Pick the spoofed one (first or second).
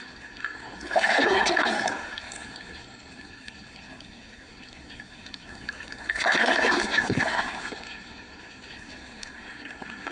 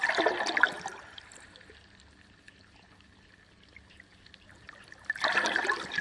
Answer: first